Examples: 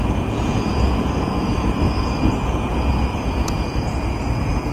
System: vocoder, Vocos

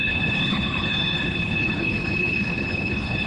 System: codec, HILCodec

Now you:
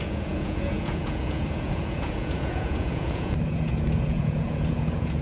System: vocoder, Vocos